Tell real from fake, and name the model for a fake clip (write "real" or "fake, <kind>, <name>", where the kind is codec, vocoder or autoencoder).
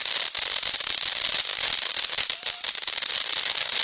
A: real